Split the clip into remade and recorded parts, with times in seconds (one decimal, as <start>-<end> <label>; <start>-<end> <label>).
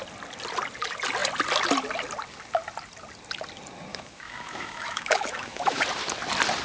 0.0-3.9 recorded; 3.9-5.8 remade; 5.8-6.6 recorded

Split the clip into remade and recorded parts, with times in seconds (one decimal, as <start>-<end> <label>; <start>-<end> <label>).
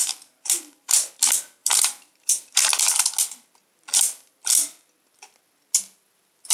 0.0-1.1 remade; 1.1-1.6 recorded; 1.6-2.7 remade; 2.7-6.5 recorded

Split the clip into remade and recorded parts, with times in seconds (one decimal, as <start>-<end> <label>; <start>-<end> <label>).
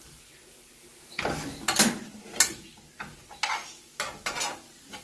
0.0-5.0 recorded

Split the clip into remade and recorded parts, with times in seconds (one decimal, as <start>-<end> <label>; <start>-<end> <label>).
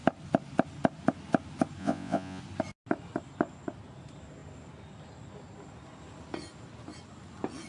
0.0-1.8 recorded; 1.8-2.4 remade; 2.4-7.7 recorded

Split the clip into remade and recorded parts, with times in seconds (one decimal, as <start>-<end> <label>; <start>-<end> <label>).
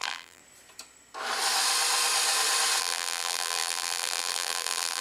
0.0-0.4 remade; 0.4-2.8 recorded; 2.8-5.0 remade